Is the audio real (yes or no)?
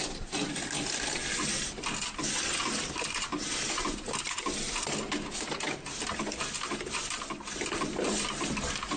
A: yes